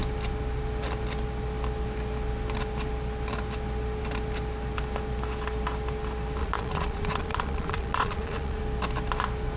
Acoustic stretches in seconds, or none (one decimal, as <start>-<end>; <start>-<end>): 0.0-6.4; 8.6-9.6